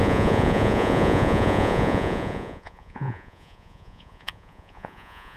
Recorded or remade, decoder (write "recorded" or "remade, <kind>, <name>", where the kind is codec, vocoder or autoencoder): remade, vocoder, Vocos